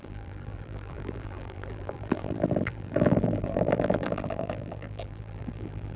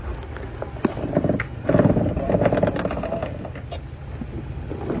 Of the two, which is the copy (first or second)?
first